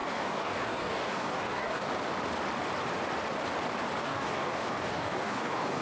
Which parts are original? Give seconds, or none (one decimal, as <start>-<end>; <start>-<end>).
1.9-4.0